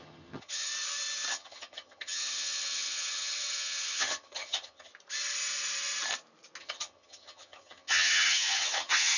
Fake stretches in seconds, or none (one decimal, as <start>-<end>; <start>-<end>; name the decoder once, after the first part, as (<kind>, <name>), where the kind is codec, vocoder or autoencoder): 0.0-0.7 (vocoder, HiFi-GAN); 1.3-4.9; 6.6-9.2